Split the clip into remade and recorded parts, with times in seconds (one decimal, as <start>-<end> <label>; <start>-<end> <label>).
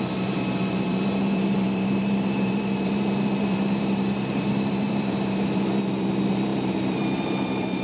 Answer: 0.0-7.8 remade